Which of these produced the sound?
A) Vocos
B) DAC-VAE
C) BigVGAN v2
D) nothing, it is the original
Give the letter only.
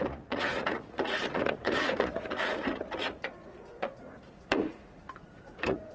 A